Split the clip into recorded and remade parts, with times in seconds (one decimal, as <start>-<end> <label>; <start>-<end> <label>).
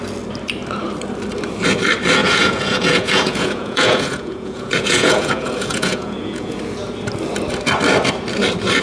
0.0-2.2 recorded; 2.2-6.6 remade; 6.6-8.8 recorded